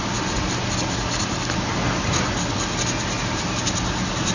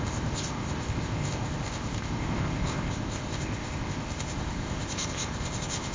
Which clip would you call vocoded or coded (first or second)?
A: second